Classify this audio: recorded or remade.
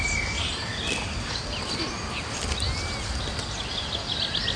recorded